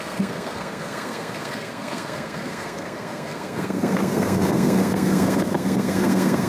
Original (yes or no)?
no